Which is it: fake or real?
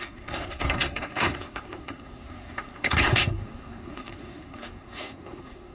fake